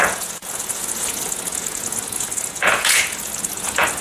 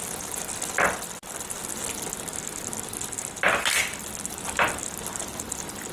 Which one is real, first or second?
second